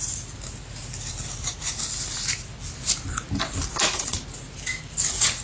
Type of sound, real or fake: real